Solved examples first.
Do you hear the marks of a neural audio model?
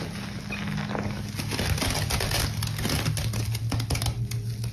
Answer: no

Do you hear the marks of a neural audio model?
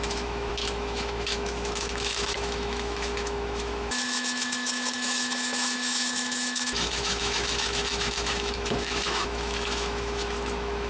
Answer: yes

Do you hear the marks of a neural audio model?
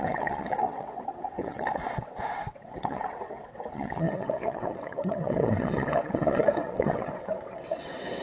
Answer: yes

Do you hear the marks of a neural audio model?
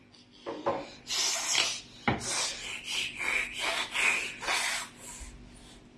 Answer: no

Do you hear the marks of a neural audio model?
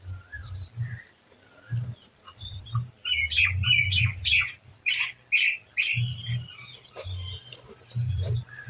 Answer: yes